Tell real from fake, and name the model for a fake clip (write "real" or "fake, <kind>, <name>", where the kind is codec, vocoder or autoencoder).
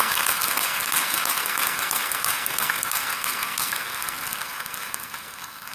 fake, codec, SNAC